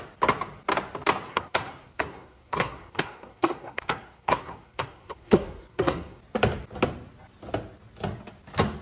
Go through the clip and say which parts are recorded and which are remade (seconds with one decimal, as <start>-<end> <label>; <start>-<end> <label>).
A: 0.0-1.3 recorded; 1.3-6.2 remade; 6.2-8.8 recorded